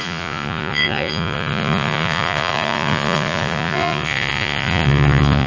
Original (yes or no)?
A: no